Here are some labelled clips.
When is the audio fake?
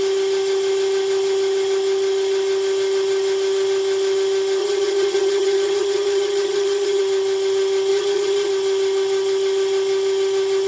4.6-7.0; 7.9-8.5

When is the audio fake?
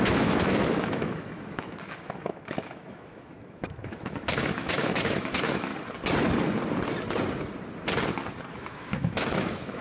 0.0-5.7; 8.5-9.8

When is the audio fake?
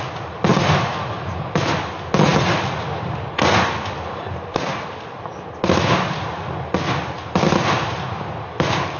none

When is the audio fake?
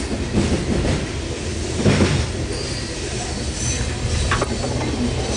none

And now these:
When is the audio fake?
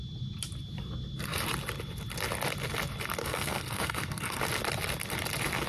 3.2-4.4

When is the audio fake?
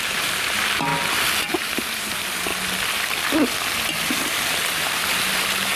0.0-0.9; 1.5-2.5; 4.2-5.8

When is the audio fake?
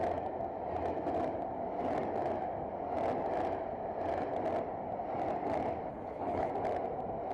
5.9-6.5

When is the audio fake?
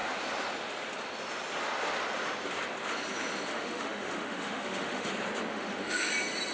3.5-5.1; 5.5-6.1